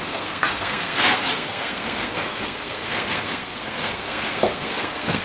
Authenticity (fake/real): fake